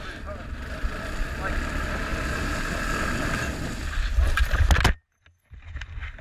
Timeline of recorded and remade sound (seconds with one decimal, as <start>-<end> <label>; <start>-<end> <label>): 0.0-6.2 recorded